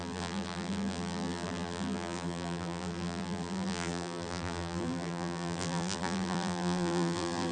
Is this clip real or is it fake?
fake